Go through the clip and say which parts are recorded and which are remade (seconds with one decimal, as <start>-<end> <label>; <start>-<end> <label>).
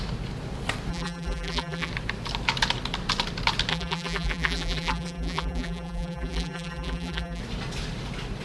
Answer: 0.0-0.9 recorded; 0.9-1.9 remade; 1.9-3.7 recorded; 3.7-7.4 remade; 7.4-8.4 recorded